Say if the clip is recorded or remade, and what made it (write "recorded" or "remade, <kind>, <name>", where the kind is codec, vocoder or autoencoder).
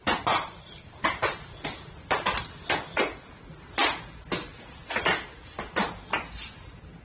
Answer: recorded